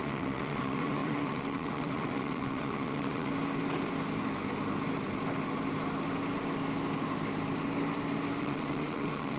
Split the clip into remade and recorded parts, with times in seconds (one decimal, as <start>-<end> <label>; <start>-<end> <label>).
0.0-3.3 remade; 3.3-8.4 recorded; 8.4-9.4 remade